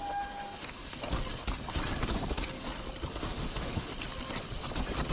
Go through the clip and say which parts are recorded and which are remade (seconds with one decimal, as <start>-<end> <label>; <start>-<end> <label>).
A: 0.0-0.9 remade; 0.9-3.1 recorded; 3.1-3.9 remade; 3.9-5.1 recorded